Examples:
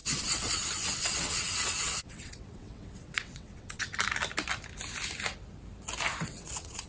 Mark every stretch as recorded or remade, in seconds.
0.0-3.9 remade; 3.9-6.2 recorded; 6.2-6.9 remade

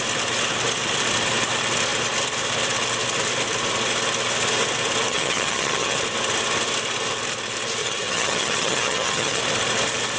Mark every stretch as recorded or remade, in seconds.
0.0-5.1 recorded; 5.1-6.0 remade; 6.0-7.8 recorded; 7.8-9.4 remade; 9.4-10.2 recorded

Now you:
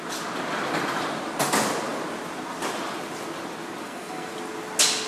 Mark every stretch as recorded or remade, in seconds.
0.0-3.8 recorded; 3.8-4.3 remade; 4.3-5.1 recorded

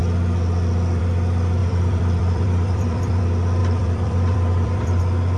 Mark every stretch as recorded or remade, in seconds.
0.0-1.6 recorded; 1.6-3.2 remade; 3.2-3.6 recorded; 3.6-5.0 remade; 5.0-5.4 recorded